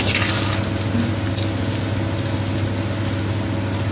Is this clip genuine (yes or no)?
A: yes